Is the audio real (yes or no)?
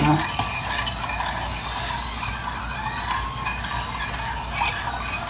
yes